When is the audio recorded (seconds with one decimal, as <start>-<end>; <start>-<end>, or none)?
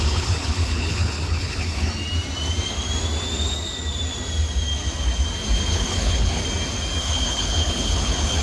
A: 1.9-5.7; 6.4-7.0